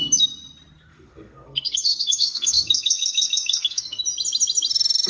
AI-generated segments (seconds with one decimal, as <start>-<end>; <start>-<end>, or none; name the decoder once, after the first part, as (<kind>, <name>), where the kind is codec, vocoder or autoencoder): 0.9-4.0 (codec, SNAC)

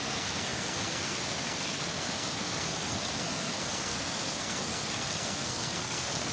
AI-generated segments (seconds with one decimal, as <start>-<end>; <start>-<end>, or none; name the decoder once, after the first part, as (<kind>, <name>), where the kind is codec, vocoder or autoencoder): 0.0-6.3 (codec, SNAC)

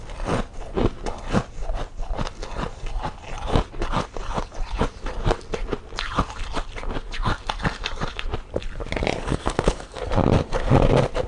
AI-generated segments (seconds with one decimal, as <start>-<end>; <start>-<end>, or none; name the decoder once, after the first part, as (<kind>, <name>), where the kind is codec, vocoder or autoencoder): 9.2-10.0 (codec, SNAC)

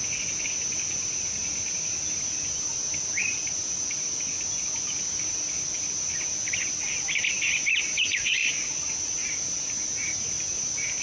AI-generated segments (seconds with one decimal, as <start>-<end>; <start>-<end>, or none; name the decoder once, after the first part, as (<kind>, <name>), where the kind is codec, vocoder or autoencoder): none

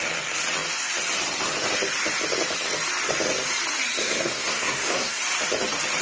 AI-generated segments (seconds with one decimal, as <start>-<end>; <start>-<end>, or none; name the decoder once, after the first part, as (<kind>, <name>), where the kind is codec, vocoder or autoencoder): 4.0-5.2 (codec, SNAC)

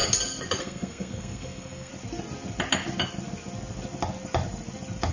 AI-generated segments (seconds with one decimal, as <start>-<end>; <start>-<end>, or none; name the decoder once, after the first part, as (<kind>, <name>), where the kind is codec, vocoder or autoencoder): 0.6-1.9 (codec, SNAC)

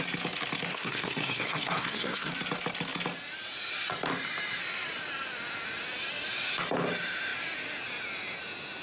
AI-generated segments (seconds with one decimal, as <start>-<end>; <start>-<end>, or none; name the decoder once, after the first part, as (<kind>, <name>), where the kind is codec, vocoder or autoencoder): 0.7-2.3 (codec, SNAC)